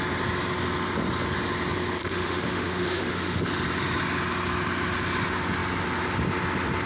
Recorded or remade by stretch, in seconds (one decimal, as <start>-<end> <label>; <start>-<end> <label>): 0.0-2.0 recorded; 2.0-3.5 remade; 3.5-6.9 recorded